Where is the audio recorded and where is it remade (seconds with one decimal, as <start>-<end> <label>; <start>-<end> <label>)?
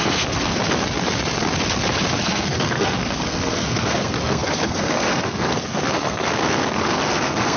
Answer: 0.0-0.6 remade; 0.6-2.2 recorded; 2.2-7.6 remade